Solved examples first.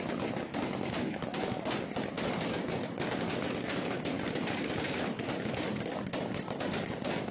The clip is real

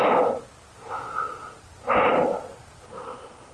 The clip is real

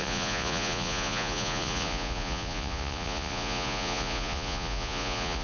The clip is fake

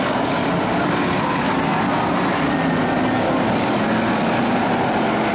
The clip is real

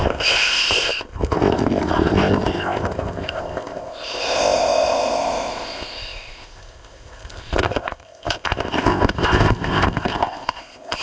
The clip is fake